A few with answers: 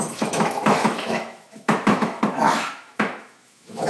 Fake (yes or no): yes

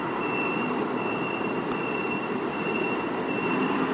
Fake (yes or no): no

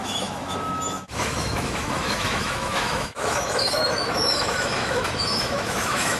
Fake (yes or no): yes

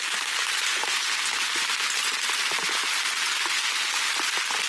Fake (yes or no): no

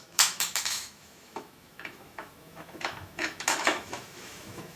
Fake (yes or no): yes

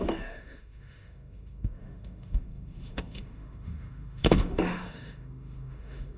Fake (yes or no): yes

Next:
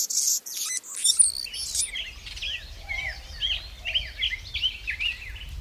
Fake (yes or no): no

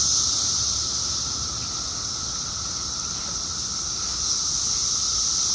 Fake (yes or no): no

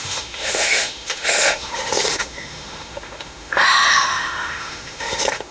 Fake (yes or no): yes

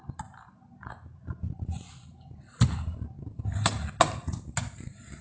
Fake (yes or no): no